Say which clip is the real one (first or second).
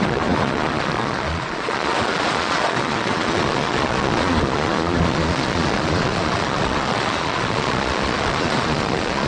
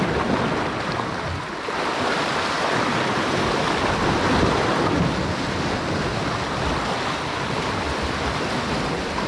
second